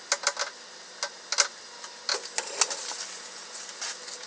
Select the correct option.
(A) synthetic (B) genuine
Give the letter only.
B